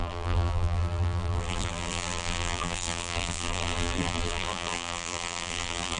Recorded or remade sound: remade